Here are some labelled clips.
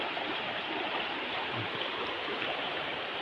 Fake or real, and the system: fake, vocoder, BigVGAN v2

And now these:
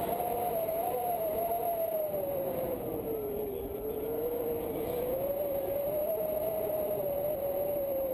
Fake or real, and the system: real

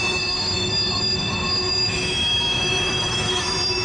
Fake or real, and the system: fake, autoencoder, DAC-VAE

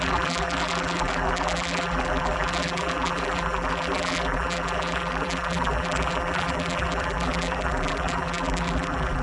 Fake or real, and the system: fake, vocoder, BigVGAN v2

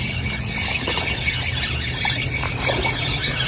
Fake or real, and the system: real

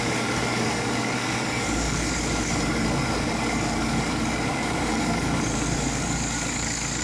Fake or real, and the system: fake, codec, DAC